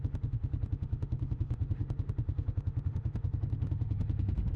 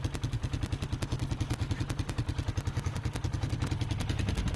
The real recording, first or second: second